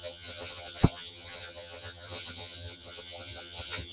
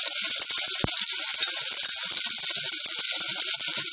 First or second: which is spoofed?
first